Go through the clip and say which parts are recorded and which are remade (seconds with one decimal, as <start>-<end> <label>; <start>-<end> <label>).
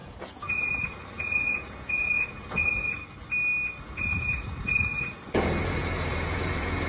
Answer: 0.0-3.0 remade; 3.0-3.8 recorded; 3.8-6.9 remade